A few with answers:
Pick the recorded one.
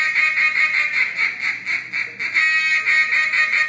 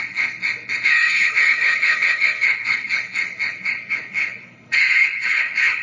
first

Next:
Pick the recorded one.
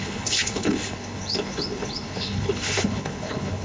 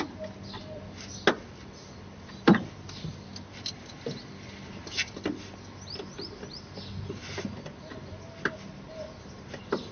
second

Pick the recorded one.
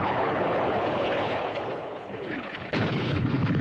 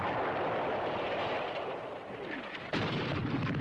second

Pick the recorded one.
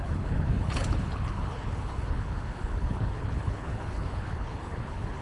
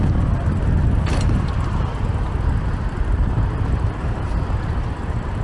second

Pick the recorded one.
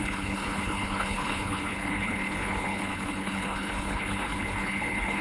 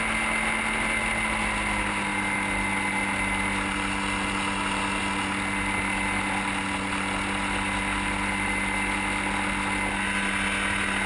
second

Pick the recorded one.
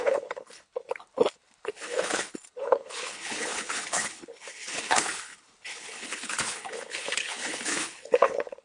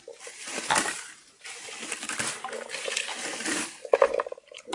second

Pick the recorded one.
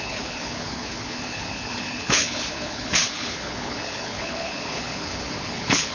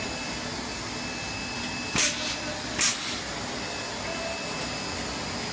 second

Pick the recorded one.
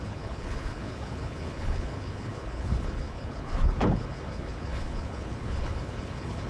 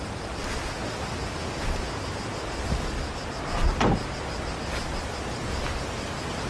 second